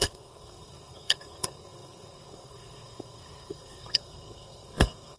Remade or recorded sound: remade